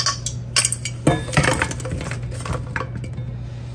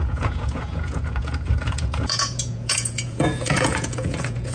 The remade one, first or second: second